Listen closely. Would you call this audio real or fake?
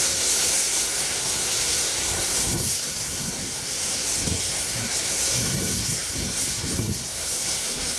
fake